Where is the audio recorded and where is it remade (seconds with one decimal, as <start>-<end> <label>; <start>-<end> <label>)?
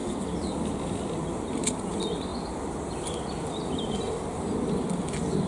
0.0-5.5 recorded